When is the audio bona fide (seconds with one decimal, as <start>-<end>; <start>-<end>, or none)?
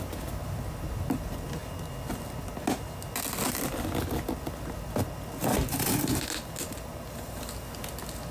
0.0-6.9; 7.4-8.3